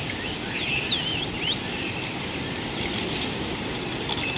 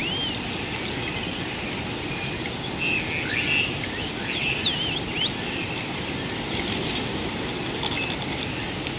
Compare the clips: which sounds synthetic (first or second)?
first